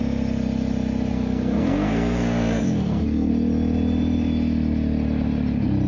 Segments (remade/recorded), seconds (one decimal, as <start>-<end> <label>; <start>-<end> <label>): 0.0-1.1 recorded; 1.1-3.3 remade; 3.3-5.9 recorded